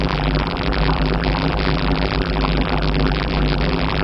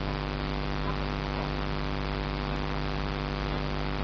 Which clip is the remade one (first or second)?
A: first